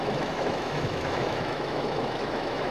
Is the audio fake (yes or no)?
yes